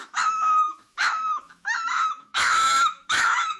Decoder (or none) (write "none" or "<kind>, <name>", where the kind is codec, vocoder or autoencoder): autoencoder, DAC-VAE